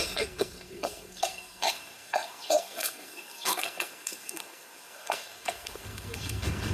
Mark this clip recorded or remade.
remade